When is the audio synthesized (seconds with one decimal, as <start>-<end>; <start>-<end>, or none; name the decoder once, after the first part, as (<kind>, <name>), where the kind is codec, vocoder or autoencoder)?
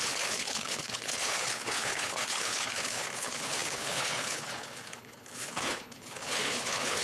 0.0-7.0 (codec, HILCodec)